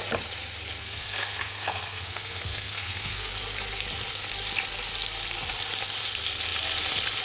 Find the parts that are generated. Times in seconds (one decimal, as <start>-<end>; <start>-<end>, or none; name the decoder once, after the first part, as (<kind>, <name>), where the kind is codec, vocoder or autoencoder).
0.8-3.3 (codec, SNAC)